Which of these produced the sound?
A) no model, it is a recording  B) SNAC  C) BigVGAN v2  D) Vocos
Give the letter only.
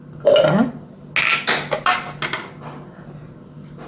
A